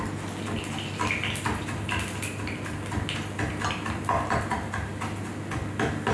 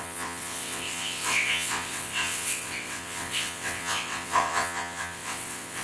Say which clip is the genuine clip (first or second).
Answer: first